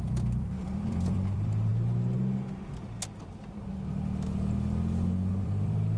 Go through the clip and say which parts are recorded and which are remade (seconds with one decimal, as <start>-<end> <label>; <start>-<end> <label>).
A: 0.0-1.7 remade; 1.7-5.3 recorded; 5.3-6.0 remade